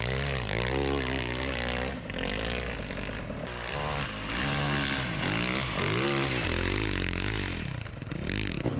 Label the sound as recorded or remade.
recorded